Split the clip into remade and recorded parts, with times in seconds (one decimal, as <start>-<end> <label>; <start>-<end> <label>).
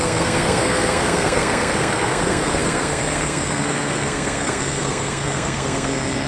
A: 0.0-6.3 remade